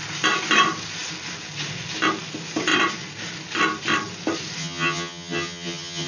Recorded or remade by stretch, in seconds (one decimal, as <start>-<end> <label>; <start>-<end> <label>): 0.0-4.6 recorded; 4.6-6.1 remade